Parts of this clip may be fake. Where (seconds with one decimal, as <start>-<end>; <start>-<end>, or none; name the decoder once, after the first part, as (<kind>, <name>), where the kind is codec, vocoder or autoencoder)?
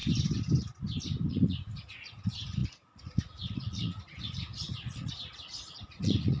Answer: 1.3-6.4 (vocoder, Vocos)